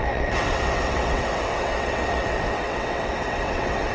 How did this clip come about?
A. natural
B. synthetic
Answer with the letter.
B